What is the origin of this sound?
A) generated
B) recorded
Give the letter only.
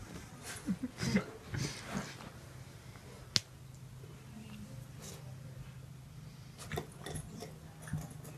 B